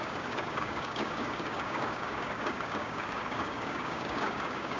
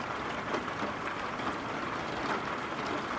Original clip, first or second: second